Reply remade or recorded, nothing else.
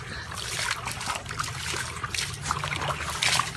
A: recorded